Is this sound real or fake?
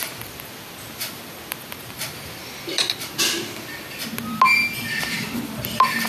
real